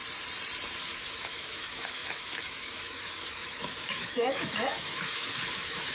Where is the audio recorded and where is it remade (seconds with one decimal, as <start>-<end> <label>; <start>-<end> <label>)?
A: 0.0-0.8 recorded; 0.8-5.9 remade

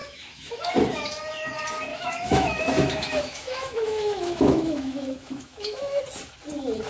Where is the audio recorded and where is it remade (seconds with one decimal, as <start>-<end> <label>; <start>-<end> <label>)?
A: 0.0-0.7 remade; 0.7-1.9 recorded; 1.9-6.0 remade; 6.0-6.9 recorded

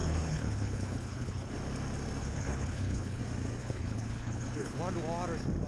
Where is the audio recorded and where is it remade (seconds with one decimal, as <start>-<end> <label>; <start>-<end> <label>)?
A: 0.0-1.5 remade; 1.5-2.2 recorded; 2.2-3.2 remade; 3.2-3.6 recorded; 3.6-4.8 remade; 4.8-5.7 recorded

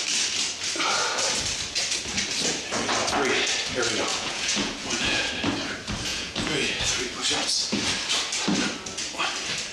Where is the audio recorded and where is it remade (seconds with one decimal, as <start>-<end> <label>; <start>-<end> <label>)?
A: 0.0-4.1 recorded; 4.1-5.3 remade; 5.3-6.1 recorded; 6.1-6.8 remade; 6.8-9.7 recorded

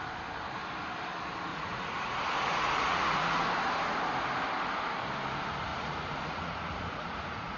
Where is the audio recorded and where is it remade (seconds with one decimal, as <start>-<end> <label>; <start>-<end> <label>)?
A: 0.0-1.5 recorded; 1.5-3.5 remade; 3.5-5.7 recorded; 5.7-7.6 remade